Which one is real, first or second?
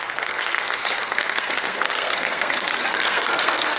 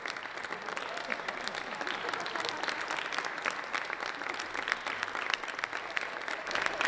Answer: second